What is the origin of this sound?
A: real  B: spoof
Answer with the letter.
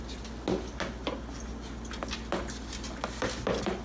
A